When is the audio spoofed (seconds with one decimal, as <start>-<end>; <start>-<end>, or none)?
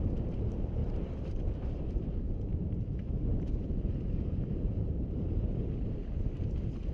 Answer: 0.8-1.3; 2.5-5.9